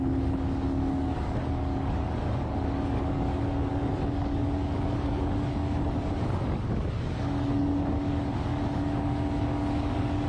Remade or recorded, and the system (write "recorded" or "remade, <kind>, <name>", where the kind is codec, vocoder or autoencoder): remade, codec, DAC